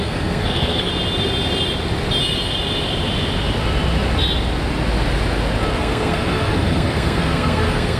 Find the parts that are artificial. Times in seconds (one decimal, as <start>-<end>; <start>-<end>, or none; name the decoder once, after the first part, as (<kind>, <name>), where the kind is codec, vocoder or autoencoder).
0.0-0.9 (codec, SNAC); 5.7-8.0

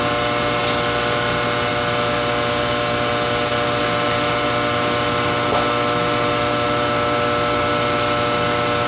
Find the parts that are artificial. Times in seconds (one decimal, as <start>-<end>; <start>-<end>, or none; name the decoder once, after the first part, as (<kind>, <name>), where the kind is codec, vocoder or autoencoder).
none